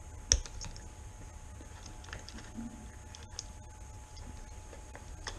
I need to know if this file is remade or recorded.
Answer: recorded